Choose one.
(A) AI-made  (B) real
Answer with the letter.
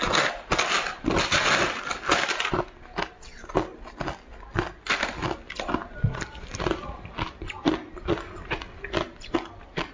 B